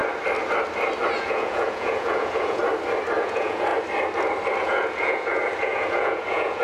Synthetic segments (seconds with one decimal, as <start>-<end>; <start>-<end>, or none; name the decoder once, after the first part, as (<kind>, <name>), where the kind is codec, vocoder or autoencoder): 1.1-2.6 (vocoder, Vocos); 3.2-3.7; 4.6-6.6